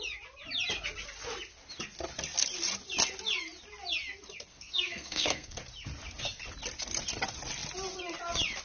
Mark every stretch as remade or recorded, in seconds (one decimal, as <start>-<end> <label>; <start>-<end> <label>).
0.0-4.5 recorded; 4.5-5.6 remade; 5.6-8.6 recorded